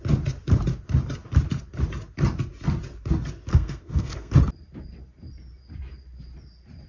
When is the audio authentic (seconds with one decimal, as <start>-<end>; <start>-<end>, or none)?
0.0-3.5; 4.3-6.9